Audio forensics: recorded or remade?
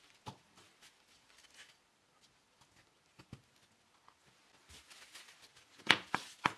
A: recorded